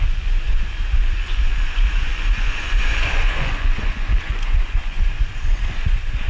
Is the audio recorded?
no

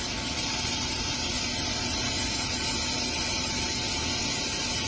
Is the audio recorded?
yes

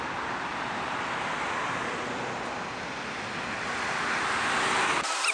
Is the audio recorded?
yes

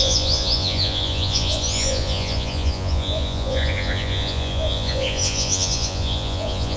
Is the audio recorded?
no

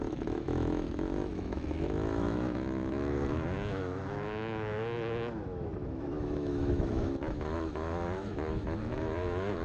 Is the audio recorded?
no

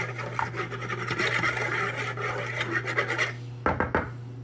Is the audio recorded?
yes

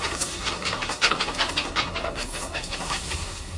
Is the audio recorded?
no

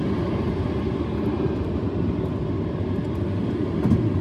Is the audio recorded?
yes